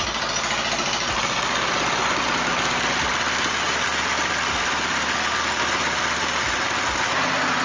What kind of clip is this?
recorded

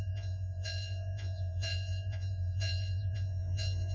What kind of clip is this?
remade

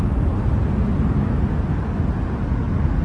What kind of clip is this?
recorded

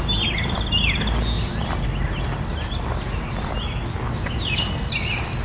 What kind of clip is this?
recorded